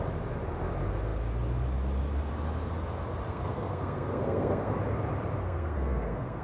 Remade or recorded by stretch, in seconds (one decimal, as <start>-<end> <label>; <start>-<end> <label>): 0.0-3.3 recorded; 3.3-4.7 remade; 4.7-5.3 recorded; 5.3-6.4 remade